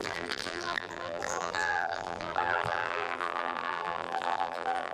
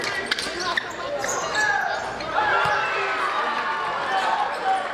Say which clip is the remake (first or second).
first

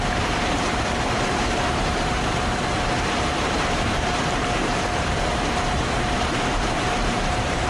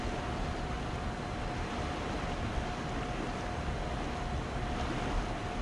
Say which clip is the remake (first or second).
first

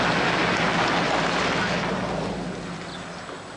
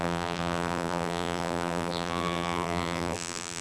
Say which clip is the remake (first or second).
second